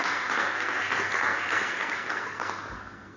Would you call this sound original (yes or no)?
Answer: no